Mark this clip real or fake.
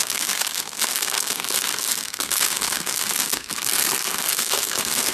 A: fake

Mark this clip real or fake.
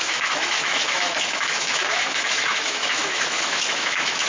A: fake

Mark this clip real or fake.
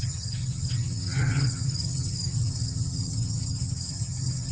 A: fake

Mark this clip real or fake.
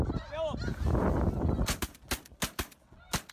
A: real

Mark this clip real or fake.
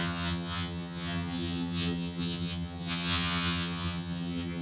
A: fake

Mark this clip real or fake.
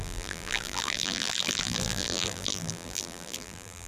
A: fake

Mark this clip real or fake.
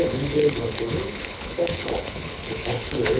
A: fake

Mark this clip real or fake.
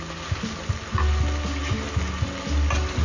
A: real